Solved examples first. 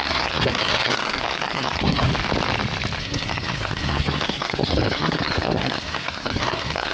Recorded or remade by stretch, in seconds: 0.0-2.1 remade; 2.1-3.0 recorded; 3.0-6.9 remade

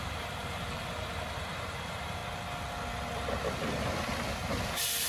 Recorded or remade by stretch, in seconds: 0.0-2.2 remade; 2.2-5.1 recorded

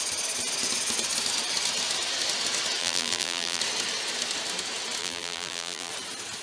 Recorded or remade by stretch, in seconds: 0.0-2.8 recorded; 2.8-3.6 remade; 3.6-5.0 recorded; 5.0-5.9 remade; 5.9-6.4 recorded

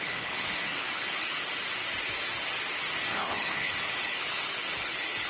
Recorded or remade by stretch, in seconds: 0.0-1.6 remade; 1.6-3.1 recorded; 3.1-5.3 remade

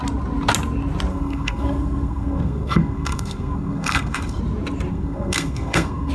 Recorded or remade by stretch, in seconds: 0.0-1.1 recorded; 1.1-4.4 remade; 4.4-4.9 recorded; 4.9-6.1 remade